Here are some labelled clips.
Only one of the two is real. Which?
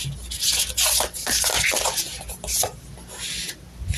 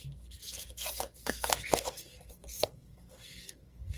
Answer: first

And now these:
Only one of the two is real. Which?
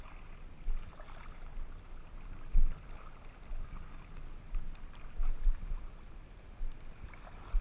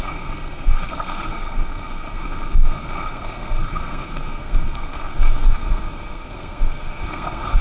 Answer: first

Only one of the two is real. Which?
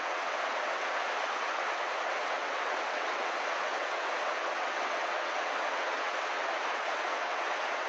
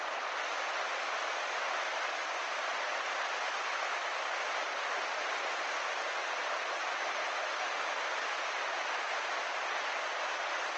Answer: second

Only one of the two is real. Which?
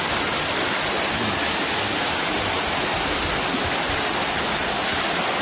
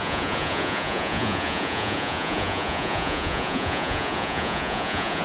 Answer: first